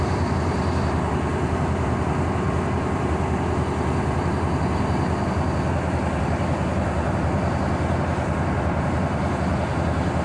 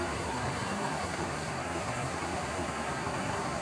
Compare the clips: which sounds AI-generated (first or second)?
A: second